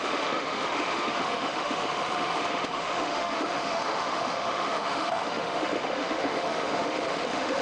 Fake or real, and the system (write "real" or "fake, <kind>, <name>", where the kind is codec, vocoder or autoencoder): fake, autoencoder, DAC-VAE